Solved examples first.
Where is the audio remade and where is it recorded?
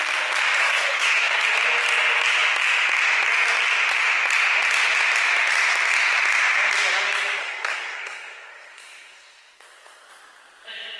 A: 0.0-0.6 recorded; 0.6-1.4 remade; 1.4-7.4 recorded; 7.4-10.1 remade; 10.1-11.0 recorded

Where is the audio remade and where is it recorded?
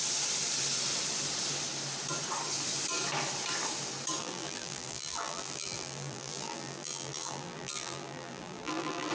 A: 0.0-4.2 recorded; 4.2-9.1 remade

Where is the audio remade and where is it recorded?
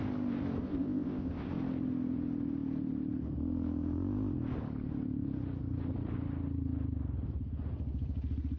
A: 0.0-0.6 recorded; 0.6-1.5 remade; 1.5-8.6 recorded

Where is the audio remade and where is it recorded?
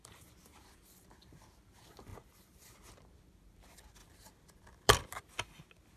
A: 0.0-4.0 recorded; 4.0-5.2 remade; 5.2-6.0 recorded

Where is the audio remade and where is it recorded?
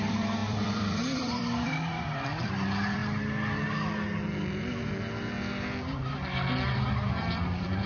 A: 0.0-3.0 remade; 3.0-7.1 recorded; 7.1-7.9 remade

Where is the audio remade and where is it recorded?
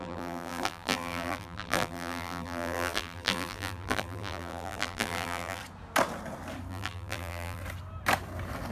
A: 0.0-5.6 remade; 5.6-6.7 recorded; 6.7-7.6 remade; 7.6-8.7 recorded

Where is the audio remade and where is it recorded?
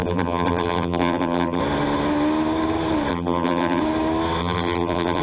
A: 0.0-1.6 remade; 1.6-3.1 recorded; 3.1-3.8 remade; 3.8-4.4 recorded; 4.4-5.2 remade